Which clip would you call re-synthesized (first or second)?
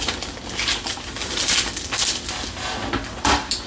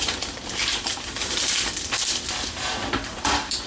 second